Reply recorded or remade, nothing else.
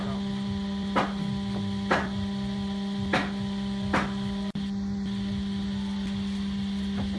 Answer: recorded